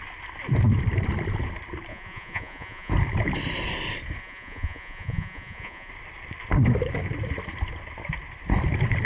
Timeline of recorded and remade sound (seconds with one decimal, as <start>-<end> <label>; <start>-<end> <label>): 0.0-1.9 recorded; 1.9-2.9 remade; 2.9-4.2 recorded; 4.2-5.9 remade; 5.9-9.1 recorded